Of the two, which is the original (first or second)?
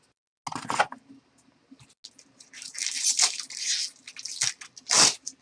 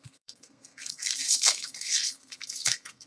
first